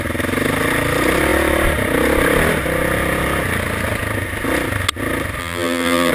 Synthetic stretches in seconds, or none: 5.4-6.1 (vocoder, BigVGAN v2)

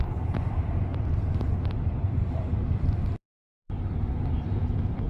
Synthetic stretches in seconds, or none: 0.0-3.4 (vocoder, BigVGAN v2); 4.4-5.1

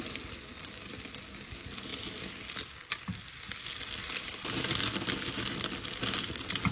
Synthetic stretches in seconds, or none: none

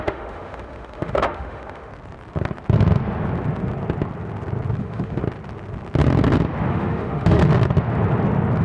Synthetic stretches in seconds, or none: 0.0-1.9 (autoencoder, DAC-VAE); 4.8-5.2; 6.7-7.4